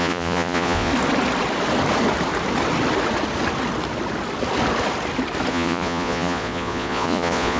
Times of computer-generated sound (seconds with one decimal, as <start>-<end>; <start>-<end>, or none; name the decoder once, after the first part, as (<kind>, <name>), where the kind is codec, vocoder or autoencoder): 0.0-0.9 (vocoder, Vocos); 5.5-7.6